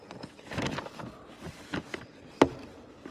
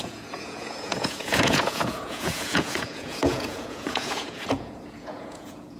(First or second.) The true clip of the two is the first